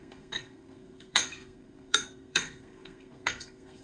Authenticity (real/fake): fake